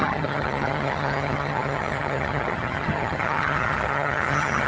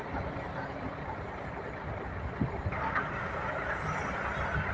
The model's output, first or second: first